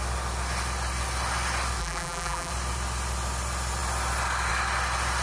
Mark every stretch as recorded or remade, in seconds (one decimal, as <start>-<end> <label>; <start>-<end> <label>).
0.0-1.8 recorded; 1.8-2.5 remade; 2.5-5.2 recorded